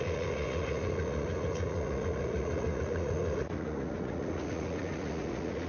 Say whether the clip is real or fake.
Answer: fake